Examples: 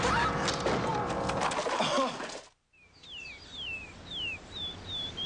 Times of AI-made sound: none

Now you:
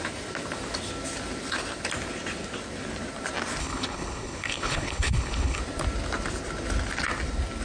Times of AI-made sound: 3.6-5.6

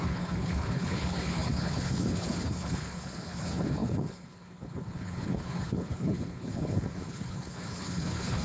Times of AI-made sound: 0.0-8.4

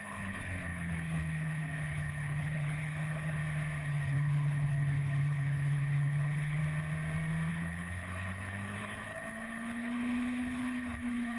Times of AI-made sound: 0.0-3.4; 3.9-6.6; 7.5-11.4